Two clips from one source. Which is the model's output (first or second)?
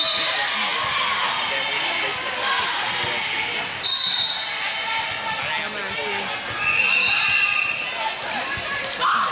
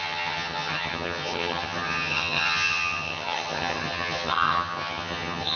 second